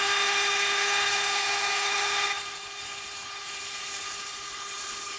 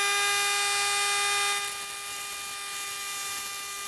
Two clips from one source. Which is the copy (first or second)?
first